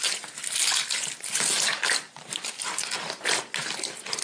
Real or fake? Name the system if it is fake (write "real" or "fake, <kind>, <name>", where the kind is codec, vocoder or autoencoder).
real